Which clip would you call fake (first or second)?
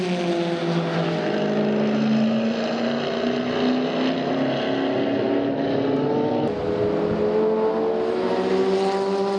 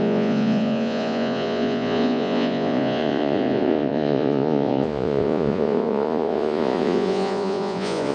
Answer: second